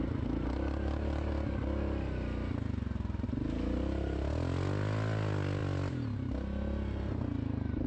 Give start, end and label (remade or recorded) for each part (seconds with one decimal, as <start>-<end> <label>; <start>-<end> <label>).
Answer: 0.0-7.9 recorded